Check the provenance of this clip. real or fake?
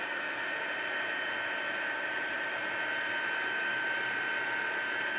real